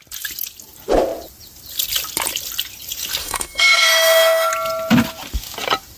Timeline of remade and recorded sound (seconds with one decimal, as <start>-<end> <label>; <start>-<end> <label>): 0.0-3.2 recorded; 3.2-4.5 remade; 4.5-6.0 recorded